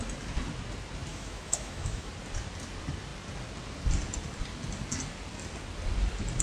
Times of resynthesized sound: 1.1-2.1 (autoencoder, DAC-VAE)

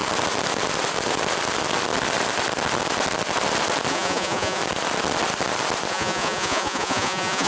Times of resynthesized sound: 3.9-4.6 (vocoder, Vocos); 5.9-7.5

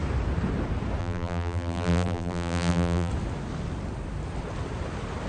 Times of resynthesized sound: 1.0-3.1 (vocoder, BigVGAN v2)

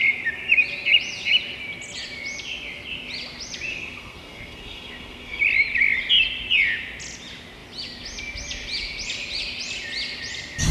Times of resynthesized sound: 3.7-5.4 (codec, SNAC)

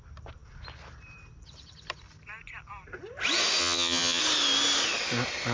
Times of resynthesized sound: 3.6-4.2 (vocoder, HiFi-GAN)

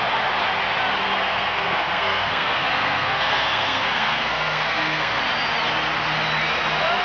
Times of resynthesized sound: 1.3-5.2 (codec, SNAC)